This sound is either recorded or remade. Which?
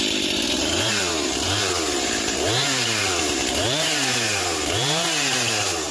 remade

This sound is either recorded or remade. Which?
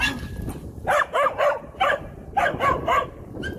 recorded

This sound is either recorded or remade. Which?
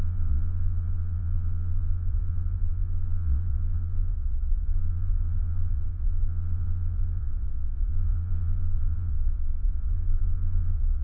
remade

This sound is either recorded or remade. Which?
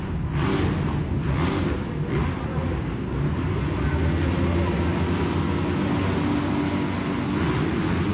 recorded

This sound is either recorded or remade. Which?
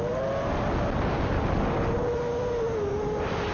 recorded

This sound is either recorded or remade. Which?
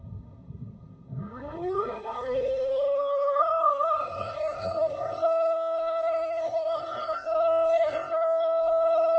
remade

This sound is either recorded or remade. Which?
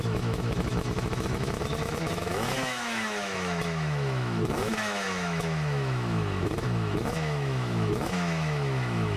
remade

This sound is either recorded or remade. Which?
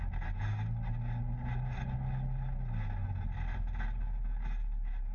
recorded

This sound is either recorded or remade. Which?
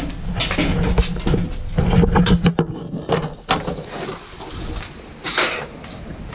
recorded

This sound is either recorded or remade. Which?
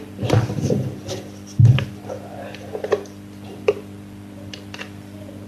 remade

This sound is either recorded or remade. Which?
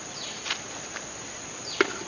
recorded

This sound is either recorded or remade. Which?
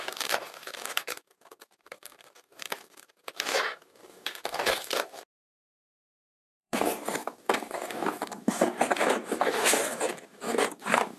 remade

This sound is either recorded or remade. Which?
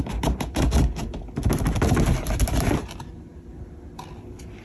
recorded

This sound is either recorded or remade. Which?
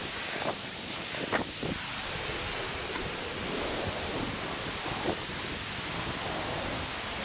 recorded